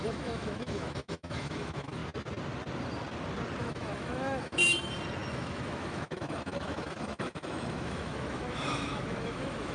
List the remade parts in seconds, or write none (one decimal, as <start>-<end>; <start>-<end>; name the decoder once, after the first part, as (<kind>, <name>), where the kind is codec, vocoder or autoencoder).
0.0-2.0 (autoencoder, DAC-VAE); 3.6-4.6; 5.3-9.7

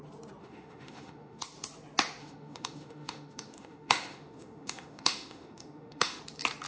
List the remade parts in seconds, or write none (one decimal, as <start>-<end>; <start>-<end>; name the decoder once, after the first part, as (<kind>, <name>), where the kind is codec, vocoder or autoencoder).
0.4-1.4 (autoencoder, DAC-VAE); 2.2-6.2

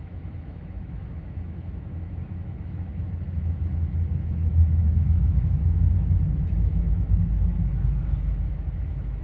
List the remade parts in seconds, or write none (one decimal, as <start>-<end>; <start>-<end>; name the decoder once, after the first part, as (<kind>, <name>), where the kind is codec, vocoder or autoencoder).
0.0-9.2 (autoencoder, DAC-VAE)